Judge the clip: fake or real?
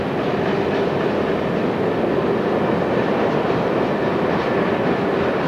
real